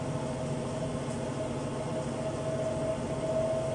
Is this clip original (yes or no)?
yes